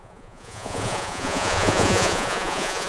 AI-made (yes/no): yes